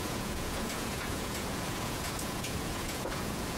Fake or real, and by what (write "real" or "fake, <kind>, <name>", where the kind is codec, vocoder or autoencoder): fake, vocoder, Vocos